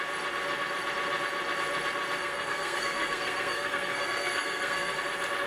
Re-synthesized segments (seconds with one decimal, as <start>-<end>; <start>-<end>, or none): 2.2-5.0